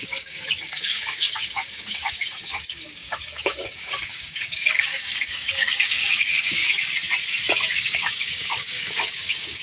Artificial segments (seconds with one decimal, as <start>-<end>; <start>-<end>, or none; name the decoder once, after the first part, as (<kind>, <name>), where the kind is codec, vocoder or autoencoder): 0.0-6.6 (codec, DAC); 7.7-9.6

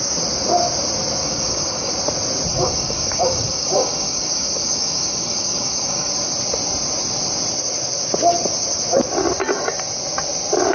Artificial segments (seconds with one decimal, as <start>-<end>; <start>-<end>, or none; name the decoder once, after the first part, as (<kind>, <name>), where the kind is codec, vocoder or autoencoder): 1.2-1.9 (codec, DAC); 2.5-6.1